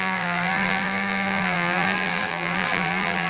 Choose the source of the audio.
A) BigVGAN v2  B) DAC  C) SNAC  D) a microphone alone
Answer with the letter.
A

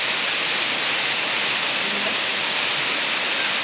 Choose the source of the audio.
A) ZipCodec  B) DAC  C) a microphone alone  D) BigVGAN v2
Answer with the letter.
C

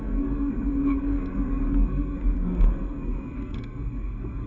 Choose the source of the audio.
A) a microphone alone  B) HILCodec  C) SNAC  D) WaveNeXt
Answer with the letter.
C